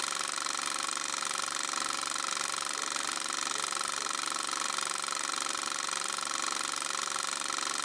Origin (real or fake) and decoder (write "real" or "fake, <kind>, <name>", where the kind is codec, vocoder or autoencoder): real